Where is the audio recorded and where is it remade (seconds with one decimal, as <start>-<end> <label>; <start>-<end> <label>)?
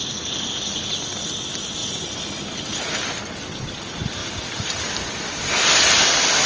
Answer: 0.0-6.5 recorded